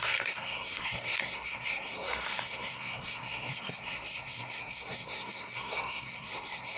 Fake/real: fake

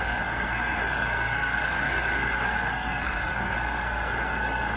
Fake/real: fake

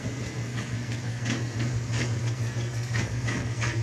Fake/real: fake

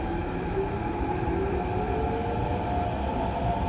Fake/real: real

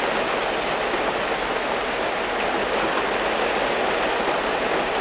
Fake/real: real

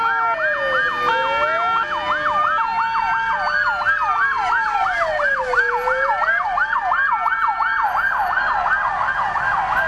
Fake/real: real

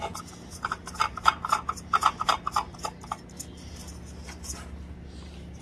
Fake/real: real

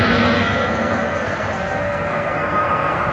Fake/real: fake